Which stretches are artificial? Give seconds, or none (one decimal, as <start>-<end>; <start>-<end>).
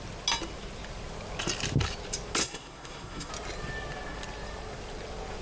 2.4-3.3